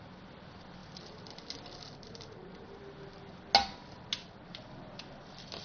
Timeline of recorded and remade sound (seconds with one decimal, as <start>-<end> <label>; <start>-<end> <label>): 0.0-5.6 recorded